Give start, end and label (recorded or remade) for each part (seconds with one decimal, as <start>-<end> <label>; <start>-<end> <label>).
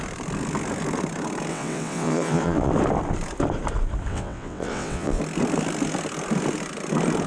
0.0-1.5 recorded; 1.5-2.7 remade; 2.7-4.1 recorded; 4.1-5.2 remade; 5.2-7.3 recorded